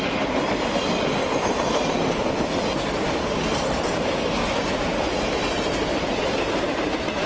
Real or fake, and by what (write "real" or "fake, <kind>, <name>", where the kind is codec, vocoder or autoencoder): real